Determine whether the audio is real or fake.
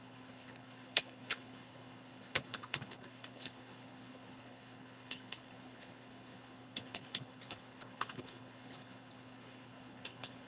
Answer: fake